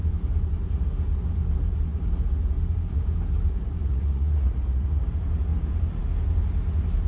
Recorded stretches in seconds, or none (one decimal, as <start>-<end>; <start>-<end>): 0.0-3.8; 5.0-7.1